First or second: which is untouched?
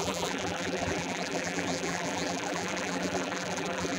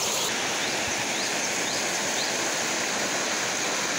second